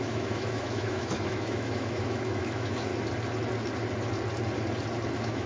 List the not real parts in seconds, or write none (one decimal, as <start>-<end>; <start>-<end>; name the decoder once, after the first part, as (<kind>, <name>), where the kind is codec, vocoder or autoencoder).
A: 0.0-2.9 (autoencoder, DAC-VAE); 5.1-5.5